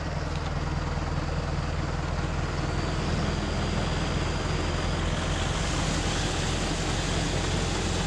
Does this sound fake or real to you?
real